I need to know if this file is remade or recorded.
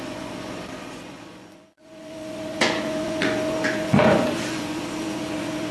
remade